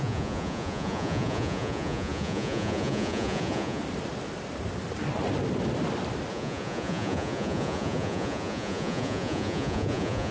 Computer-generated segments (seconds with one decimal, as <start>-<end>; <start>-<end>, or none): 0.0-3.8; 6.3-10.3